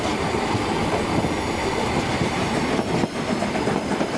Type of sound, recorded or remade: recorded